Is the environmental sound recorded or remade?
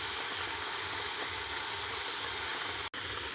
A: recorded